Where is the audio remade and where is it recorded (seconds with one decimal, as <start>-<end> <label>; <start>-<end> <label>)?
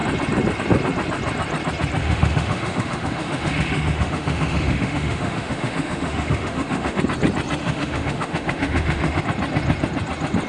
0.0-2.0 recorded; 2.0-7.0 remade; 7.0-7.6 recorded; 7.6-9.2 remade; 9.2-10.5 recorded